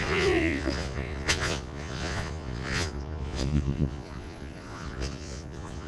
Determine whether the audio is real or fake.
fake